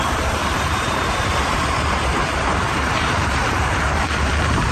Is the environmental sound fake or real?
fake